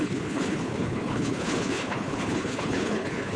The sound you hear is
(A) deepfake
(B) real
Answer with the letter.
A